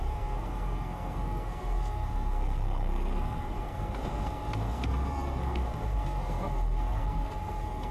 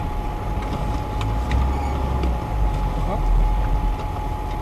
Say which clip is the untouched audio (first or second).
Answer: second